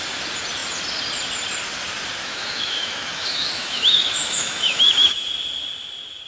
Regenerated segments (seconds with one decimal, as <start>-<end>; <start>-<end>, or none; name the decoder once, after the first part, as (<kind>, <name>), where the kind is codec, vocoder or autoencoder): 2.2-5.3 (autoencoder, DAC-VAE)